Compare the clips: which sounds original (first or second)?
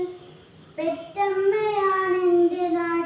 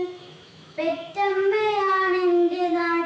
first